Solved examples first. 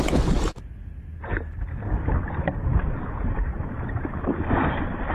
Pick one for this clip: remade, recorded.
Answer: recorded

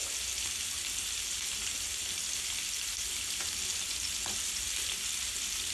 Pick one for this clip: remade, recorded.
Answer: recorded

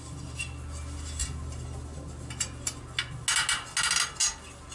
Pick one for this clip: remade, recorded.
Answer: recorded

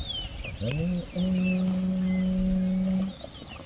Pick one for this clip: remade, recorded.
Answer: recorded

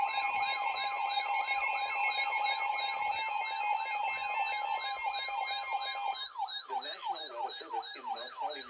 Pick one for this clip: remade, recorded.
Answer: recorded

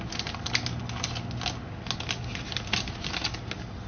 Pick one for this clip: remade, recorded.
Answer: recorded